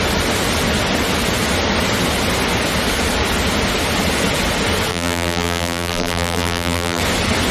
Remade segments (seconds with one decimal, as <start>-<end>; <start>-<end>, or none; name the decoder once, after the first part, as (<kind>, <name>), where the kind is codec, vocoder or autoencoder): 4.9-7.0 (vocoder, BigVGAN v2)